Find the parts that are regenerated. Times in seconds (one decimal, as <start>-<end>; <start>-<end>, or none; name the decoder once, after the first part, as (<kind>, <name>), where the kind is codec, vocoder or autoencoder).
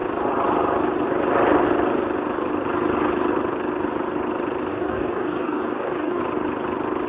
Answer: 4.7-6.2 (codec, DAC)